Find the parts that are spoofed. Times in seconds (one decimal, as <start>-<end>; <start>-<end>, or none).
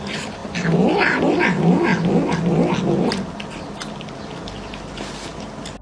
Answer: 0.0-1.9